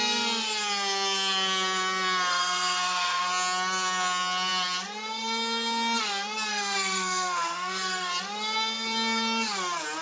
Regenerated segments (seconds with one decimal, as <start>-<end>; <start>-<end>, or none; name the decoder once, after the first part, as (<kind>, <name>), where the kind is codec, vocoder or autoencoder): 2.3-3.3 (codec, SNAC); 6.5-8.1